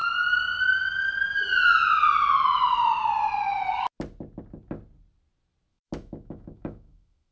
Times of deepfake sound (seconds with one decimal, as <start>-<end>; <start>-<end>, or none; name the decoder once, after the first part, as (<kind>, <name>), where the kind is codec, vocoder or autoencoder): 5.7-7.3 (autoencoder, DAC-VAE)